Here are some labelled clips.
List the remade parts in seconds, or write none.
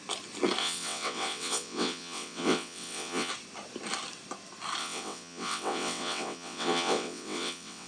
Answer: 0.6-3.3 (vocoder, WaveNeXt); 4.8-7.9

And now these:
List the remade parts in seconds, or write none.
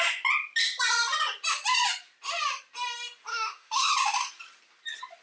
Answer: 3.3-3.9 (autoencoder, DAC-VAE)